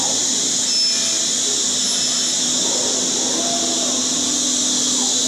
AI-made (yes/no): no